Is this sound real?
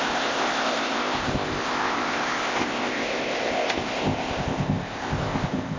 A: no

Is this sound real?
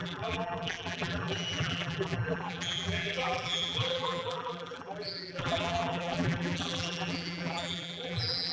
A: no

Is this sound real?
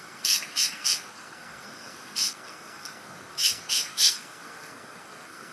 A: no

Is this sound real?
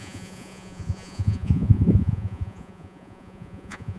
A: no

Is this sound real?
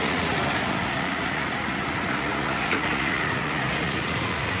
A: no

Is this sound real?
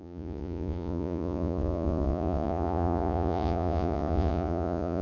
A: no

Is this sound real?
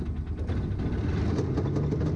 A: yes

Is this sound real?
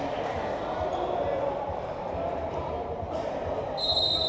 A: yes